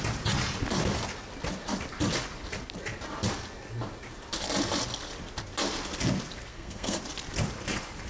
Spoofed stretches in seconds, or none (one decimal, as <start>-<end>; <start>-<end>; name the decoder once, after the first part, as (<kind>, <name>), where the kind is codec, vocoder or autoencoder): 6.5-7.0 (codec, SNAC)